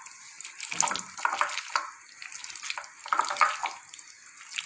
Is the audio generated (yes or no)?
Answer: no